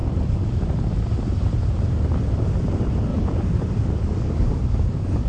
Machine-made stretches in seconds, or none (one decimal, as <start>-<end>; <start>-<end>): 3.1-5.3